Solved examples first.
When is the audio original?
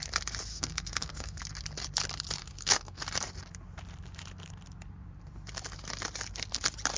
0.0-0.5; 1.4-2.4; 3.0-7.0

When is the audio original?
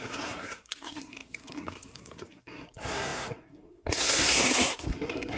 none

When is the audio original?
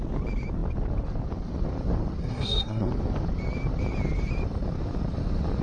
0.0-2.2; 2.9-5.6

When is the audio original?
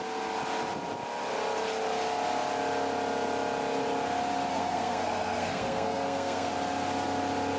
0.0-4.5; 6.5-7.6